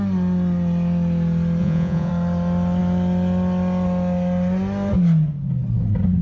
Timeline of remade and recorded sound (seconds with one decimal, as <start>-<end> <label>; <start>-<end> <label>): 0.0-1.6 recorded; 1.6-2.1 remade; 2.1-6.2 recorded